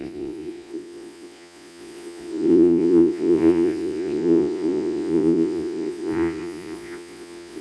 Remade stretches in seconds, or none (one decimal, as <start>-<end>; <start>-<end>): 0.0-7.6